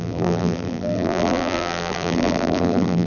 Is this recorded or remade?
remade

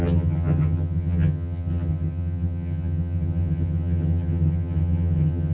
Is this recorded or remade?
remade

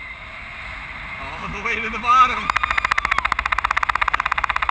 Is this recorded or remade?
recorded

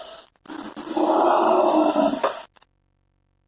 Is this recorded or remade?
recorded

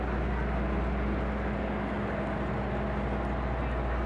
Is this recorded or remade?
recorded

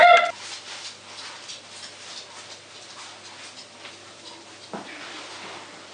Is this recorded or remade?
recorded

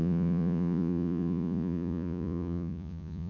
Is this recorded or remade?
remade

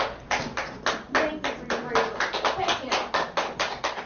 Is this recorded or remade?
recorded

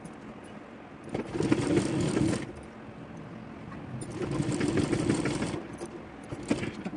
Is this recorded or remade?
recorded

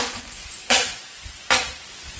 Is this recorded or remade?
remade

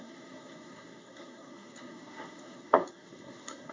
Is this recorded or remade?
remade